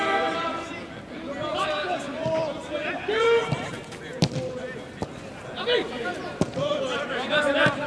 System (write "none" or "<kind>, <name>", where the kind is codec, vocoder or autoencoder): none